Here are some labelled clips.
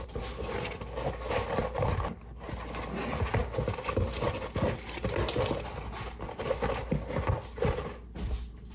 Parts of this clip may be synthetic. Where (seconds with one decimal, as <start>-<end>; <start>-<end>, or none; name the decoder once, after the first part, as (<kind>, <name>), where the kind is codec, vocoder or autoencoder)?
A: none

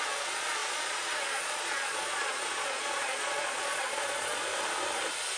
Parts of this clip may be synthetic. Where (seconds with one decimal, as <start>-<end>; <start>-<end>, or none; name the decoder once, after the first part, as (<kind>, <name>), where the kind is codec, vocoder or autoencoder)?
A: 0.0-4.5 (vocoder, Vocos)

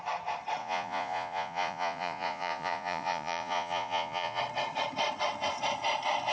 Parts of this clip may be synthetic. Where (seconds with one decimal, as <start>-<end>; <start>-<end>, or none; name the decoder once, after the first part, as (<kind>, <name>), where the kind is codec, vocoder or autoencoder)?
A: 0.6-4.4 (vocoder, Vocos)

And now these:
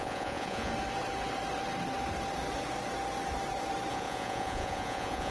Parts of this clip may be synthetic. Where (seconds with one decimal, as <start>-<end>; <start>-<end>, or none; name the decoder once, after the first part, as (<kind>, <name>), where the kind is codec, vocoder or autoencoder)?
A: 0.0-0.7 (vocoder, Vocos); 3.9-5.3